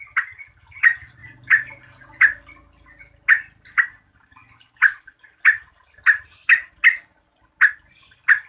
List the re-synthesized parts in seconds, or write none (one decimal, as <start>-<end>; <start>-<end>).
none